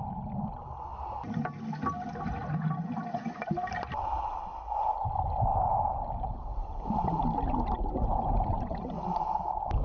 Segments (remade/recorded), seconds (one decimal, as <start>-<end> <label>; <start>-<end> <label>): 0.0-5.5 recorded; 5.5-8.9 remade; 8.9-9.8 recorded